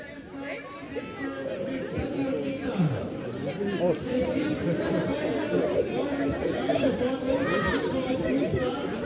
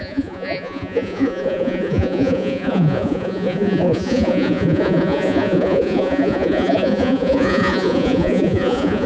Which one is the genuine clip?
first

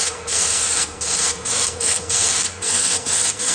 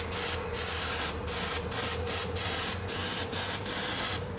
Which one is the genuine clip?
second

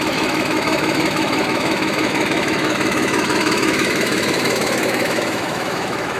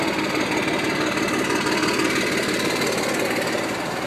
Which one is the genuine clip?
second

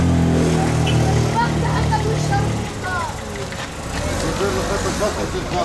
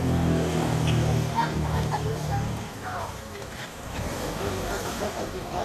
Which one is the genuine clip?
first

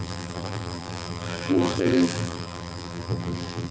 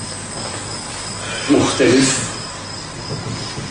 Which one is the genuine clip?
second